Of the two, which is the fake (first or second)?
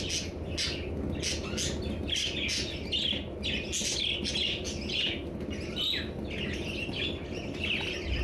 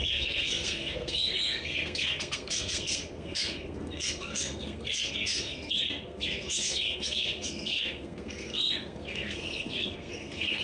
second